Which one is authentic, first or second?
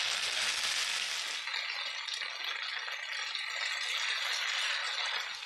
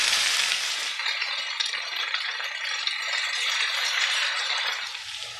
first